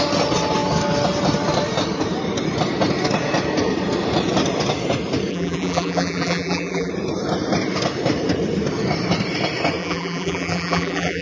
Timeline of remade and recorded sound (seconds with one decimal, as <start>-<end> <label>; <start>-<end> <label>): 0.0-5.3 recorded; 5.3-6.9 remade; 6.9-9.8 recorded; 9.8-11.2 remade